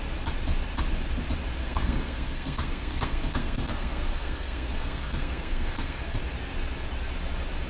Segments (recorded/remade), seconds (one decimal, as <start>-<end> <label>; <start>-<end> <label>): 0.0-1.6 recorded; 1.6-6.2 remade; 6.2-7.7 recorded